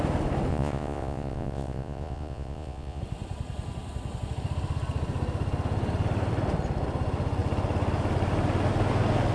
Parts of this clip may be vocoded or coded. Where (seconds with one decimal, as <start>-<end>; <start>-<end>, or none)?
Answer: 0.5-3.0